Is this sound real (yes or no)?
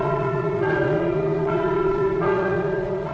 no